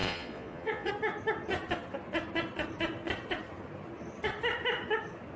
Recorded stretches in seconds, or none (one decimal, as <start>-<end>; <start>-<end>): 0.9-5.4

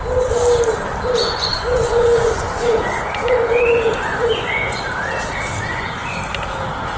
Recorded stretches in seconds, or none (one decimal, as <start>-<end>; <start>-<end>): 0.0-1.2; 4.8-5.7; 6.2-7.0